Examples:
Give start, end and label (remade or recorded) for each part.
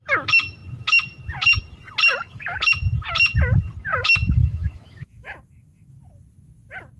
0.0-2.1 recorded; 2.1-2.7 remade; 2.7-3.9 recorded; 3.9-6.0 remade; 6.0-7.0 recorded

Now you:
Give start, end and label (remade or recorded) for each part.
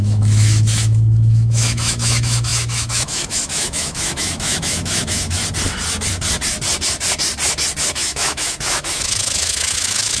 0.0-5.4 remade; 5.4-7.9 recorded; 7.9-10.2 remade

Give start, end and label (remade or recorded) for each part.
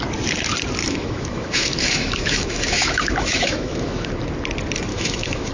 0.0-0.8 recorded; 0.8-4.1 remade; 4.1-4.9 recorded; 4.9-5.5 remade